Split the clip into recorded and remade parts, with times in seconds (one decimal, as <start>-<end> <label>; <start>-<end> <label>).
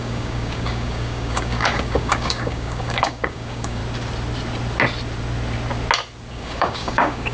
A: 0.0-3.8 remade; 3.8-6.3 recorded; 6.3-7.3 remade